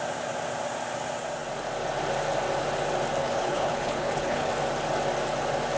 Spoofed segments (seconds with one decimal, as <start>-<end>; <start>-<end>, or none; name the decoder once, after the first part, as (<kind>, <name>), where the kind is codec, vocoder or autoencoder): 3.2-4.5 (codec, HILCodec)